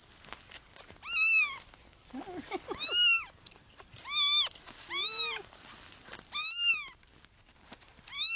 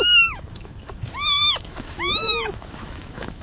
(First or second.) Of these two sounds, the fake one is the second